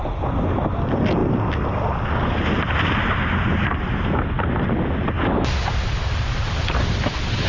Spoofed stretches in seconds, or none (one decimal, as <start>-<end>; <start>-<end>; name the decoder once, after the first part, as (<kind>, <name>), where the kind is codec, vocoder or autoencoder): 0.6-1.2 (vocoder, BigVGAN v2); 5.7-7.5